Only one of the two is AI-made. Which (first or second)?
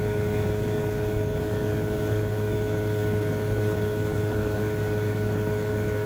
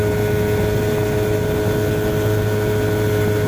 first